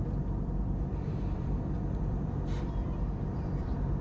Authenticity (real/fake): fake